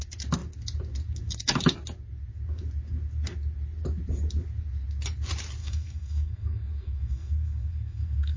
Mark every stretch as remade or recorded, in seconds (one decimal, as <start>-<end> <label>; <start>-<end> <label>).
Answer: 0.0-5.6 recorded; 5.6-8.4 remade